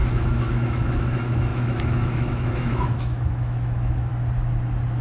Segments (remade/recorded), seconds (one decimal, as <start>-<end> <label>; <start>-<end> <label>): 0.0-4.1 remade; 4.1-5.0 recorded